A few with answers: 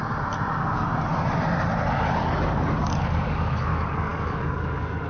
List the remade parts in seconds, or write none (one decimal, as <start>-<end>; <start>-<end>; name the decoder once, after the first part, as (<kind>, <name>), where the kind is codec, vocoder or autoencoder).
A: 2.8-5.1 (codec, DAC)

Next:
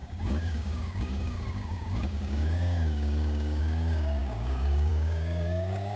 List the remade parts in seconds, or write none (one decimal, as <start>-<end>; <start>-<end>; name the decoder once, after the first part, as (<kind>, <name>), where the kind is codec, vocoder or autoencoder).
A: 0.0-6.0 (codec, DAC)

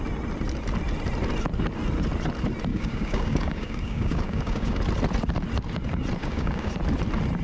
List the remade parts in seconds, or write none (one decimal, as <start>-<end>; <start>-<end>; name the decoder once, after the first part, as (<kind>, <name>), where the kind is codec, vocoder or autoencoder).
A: 2.7-4.8 (codec, DAC); 6.2-6.7